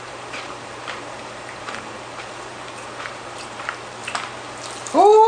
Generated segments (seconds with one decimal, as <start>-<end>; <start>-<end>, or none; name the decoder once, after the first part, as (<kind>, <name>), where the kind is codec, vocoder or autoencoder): 0.0-4.0 (vocoder, BigVGAN v2)